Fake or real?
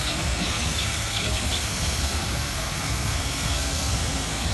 fake